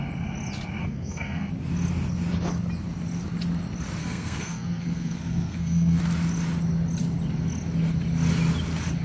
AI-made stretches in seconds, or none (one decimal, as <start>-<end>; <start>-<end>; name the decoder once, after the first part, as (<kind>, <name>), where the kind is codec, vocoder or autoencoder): 0.8-1.5 (codec, SNAC); 4.0-6.0